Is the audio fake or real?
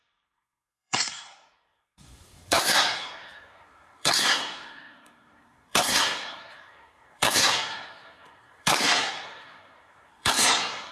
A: fake